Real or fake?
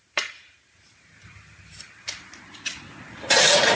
fake